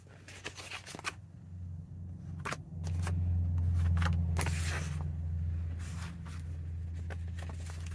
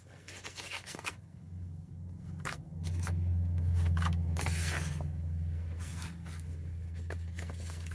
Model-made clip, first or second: second